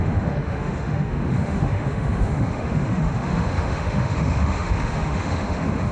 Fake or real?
fake